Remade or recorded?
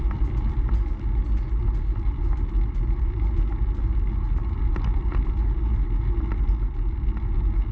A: recorded